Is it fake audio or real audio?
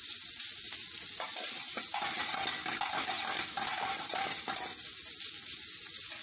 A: real